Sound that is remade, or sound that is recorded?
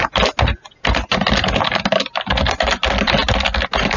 recorded